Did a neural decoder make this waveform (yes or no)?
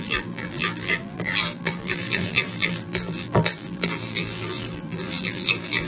yes